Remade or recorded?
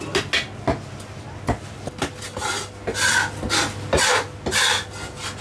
recorded